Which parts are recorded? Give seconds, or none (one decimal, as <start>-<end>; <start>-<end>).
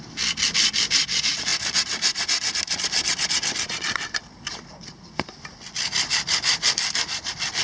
0.0-7.6